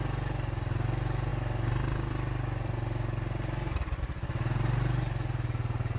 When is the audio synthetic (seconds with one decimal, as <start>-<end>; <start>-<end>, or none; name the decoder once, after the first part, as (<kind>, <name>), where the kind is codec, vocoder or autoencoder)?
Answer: none